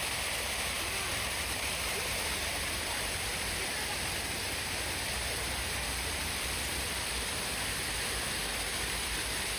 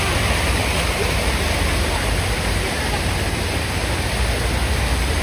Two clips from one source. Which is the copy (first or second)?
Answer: first